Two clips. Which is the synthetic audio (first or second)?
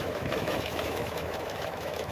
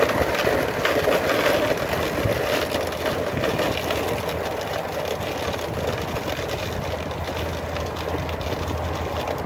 first